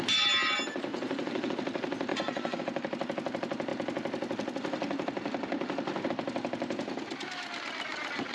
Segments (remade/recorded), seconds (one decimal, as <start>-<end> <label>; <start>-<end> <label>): 0.0-0.9 recorded; 0.9-1.5 remade; 1.5-2.1 recorded; 2.1-2.6 remade; 2.6-8.3 recorded